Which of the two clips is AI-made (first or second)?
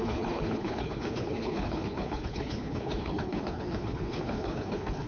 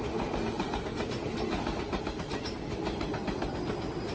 first